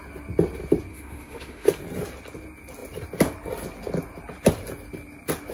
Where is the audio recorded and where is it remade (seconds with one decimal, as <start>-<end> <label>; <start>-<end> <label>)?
0.0-0.9 recorded; 0.9-1.7 remade; 1.7-5.5 recorded